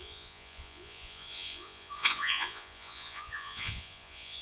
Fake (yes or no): yes